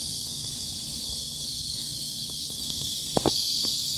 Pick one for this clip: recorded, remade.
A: remade